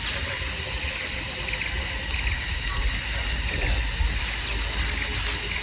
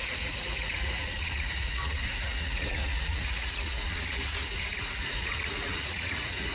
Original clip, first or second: first